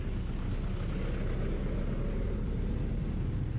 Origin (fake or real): real